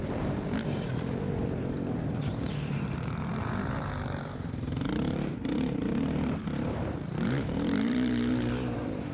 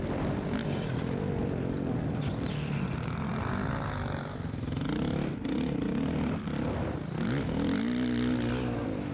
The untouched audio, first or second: second